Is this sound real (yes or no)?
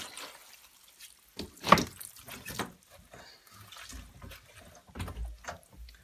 yes